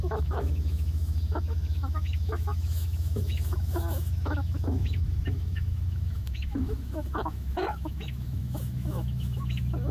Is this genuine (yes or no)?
no